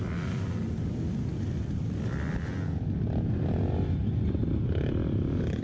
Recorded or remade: recorded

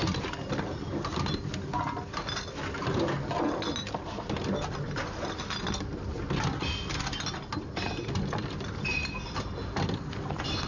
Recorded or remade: recorded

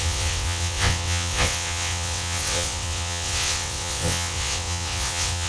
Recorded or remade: remade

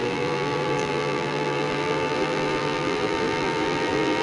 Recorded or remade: remade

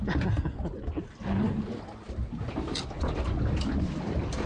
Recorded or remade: recorded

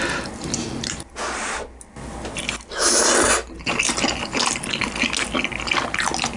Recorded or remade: recorded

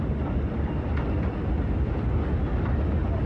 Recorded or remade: recorded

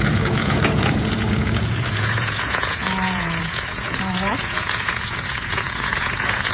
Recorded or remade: remade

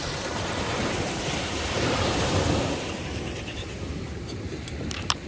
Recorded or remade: remade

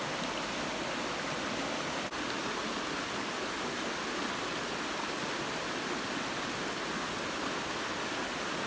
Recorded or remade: recorded